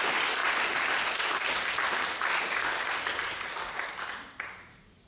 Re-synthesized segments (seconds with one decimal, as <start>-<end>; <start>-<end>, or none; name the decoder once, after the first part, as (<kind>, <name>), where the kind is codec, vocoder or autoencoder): none